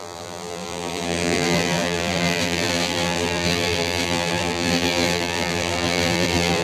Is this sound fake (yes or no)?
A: yes